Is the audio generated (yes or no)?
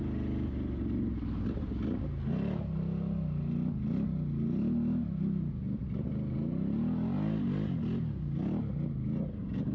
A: no